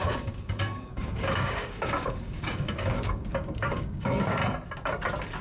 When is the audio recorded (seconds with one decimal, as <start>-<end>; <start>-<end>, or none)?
4.4-5.4